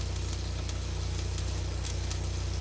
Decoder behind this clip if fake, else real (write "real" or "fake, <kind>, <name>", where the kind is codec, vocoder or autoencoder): real